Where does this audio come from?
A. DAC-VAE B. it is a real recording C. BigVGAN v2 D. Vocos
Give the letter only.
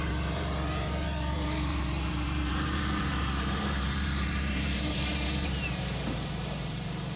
C